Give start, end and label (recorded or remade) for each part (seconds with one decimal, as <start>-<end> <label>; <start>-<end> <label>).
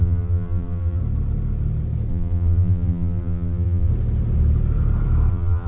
0.0-1.0 remade; 1.0-2.1 recorded; 2.1-3.9 remade; 3.9-5.3 recorded; 5.3-5.7 remade